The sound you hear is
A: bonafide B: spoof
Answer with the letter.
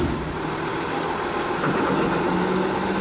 A